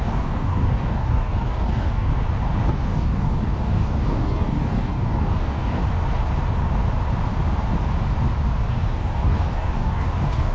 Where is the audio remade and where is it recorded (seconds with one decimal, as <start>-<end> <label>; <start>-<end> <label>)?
0.0-2.1 remade; 2.1-2.7 recorded; 2.7-5.8 remade; 5.8-8.7 recorded; 8.7-10.5 remade